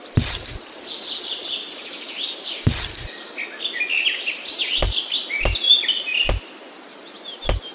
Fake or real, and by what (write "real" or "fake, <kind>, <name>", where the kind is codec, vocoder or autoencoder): real